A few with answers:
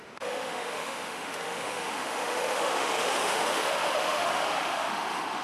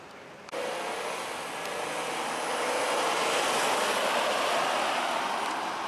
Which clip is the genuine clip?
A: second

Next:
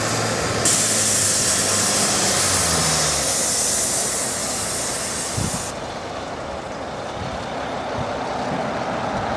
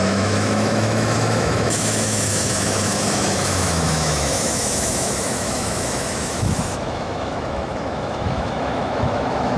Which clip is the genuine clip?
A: first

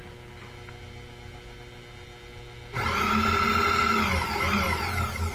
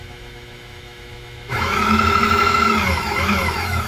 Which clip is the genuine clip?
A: first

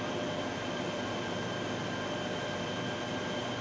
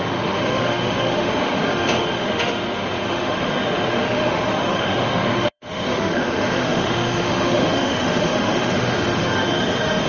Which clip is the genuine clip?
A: first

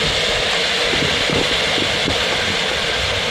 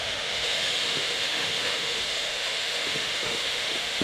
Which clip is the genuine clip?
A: first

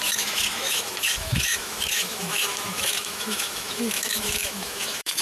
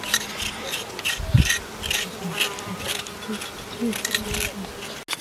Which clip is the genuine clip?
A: second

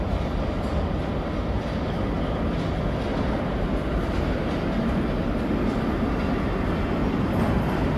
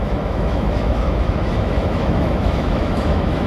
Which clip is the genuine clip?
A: first